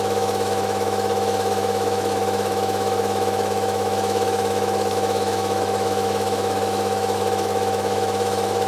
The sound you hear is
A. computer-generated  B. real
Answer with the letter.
A